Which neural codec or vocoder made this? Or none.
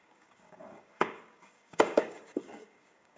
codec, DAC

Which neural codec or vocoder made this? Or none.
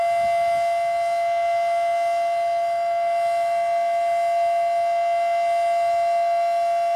none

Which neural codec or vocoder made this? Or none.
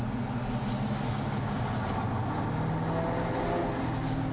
none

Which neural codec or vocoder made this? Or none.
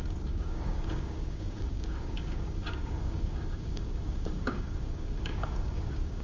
codec, DAC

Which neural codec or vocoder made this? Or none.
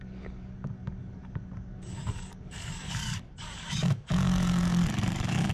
codec, DAC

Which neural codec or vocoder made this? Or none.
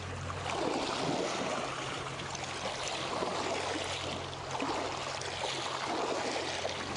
none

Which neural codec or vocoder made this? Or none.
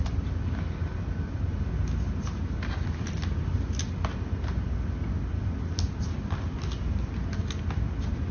none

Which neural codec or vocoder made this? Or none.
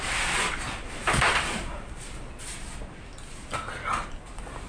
none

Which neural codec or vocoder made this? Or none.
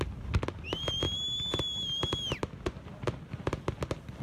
none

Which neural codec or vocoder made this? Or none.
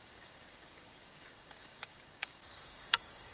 codec, DAC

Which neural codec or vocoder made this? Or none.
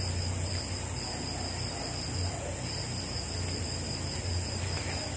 none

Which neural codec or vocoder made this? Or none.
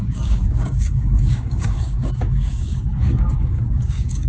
codec, DAC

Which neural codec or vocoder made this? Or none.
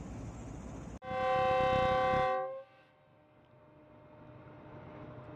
none